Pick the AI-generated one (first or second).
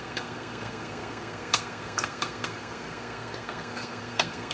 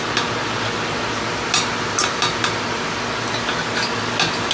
first